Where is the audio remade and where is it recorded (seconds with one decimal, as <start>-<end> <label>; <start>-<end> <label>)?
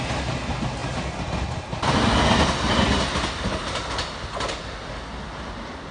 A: 0.0-5.9 recorded